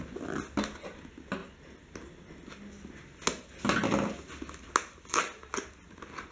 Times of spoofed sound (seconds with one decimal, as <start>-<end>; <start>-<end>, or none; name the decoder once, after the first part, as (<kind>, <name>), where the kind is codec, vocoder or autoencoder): none